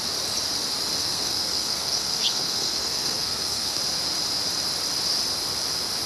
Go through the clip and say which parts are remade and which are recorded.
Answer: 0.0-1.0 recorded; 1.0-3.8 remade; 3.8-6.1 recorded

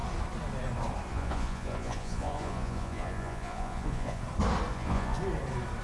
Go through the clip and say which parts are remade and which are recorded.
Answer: 0.0-1.1 recorded; 1.1-4.2 remade; 4.2-4.7 recorded; 4.7-5.2 remade; 5.2-5.8 recorded

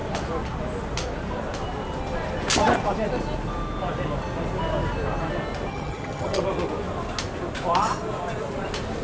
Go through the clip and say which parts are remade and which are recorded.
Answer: 0.0-5.7 recorded; 5.7-6.4 remade; 6.4-9.0 recorded

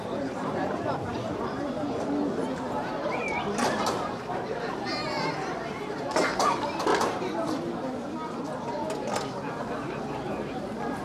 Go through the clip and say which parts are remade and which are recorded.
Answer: 0.0-1.1 remade; 1.1-3.8 recorded; 3.8-6.9 remade; 6.9-9.6 recorded; 9.6-11.0 remade

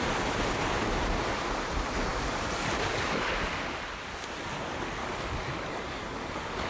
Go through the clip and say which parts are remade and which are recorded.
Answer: 0.0-2.1 recorded; 2.1-3.3 remade; 3.3-5.0 recorded; 5.0-6.7 remade

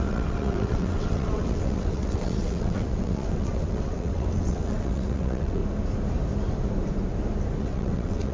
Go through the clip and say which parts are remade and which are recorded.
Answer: 0.0-5.6 remade; 5.6-7.6 recorded; 7.6-8.3 remade

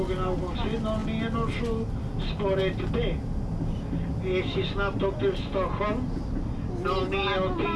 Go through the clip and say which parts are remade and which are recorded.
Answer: 0.0-7.8 recorded